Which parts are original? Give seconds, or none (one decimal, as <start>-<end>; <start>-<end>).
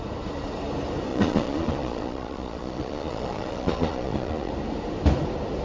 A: 0.0-1.1; 4.5-5.6